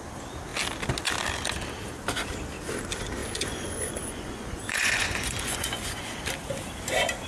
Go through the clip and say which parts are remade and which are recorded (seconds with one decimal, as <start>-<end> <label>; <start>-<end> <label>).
0.0-3.2 recorded; 3.2-6.2 remade; 6.2-7.3 recorded